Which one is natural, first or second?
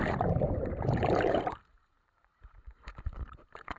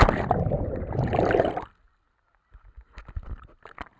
second